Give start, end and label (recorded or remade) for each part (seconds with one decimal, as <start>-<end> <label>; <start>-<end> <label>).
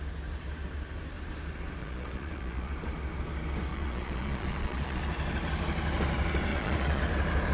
0.0-1.8 recorded; 1.8-2.7 remade; 2.7-3.7 recorded; 3.7-5.0 remade; 5.0-6.5 recorded; 6.5-7.0 remade; 7.0-7.5 recorded